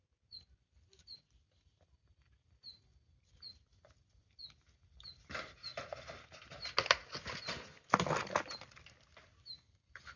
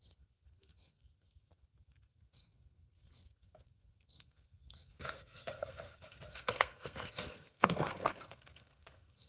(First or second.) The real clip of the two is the first